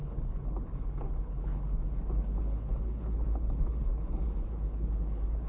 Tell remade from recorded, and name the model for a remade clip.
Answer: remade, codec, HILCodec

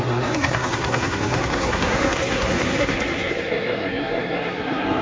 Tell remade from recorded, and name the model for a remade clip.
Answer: remade, codec, SNAC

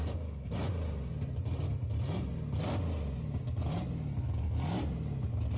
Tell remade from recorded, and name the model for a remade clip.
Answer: recorded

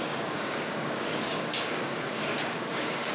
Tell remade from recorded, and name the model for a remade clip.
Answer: remade, codec, DAC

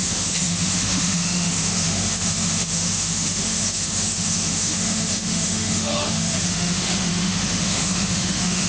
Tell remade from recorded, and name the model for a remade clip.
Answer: remade, autoencoder, DAC-VAE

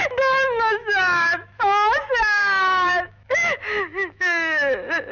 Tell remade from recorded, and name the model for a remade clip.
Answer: remade, autoencoder, DAC-VAE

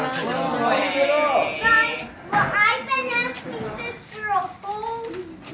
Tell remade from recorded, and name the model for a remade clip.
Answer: recorded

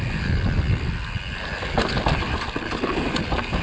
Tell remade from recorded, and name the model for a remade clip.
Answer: recorded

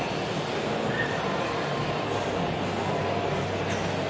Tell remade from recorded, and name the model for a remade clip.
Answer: recorded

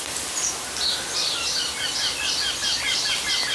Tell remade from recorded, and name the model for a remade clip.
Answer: recorded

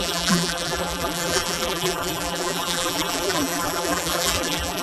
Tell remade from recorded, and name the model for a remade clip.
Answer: remade, vocoder, BigVGAN v2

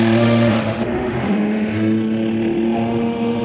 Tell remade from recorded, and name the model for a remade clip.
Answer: remade, autoencoder, DAC-VAE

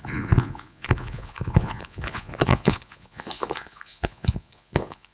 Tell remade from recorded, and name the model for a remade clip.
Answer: remade, vocoder, Vocos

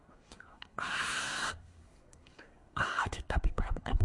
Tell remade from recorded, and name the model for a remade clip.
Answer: remade, codec, SNAC